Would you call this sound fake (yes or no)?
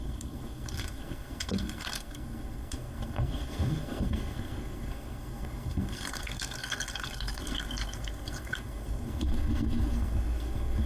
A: yes